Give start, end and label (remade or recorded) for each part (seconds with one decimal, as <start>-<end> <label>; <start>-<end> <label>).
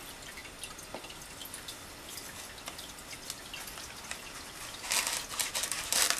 0.0-0.4 recorded; 0.4-1.0 remade; 1.0-6.2 recorded